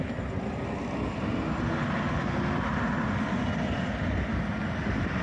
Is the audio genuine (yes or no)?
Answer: yes